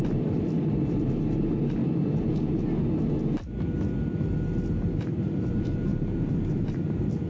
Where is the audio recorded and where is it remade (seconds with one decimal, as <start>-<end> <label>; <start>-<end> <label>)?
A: 0.0-1.8 remade; 1.8-4.7 recorded; 4.7-7.3 remade